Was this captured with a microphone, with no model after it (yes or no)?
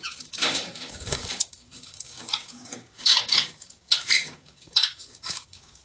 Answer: no